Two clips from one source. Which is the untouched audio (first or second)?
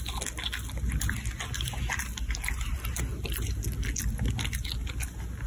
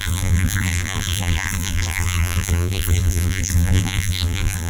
first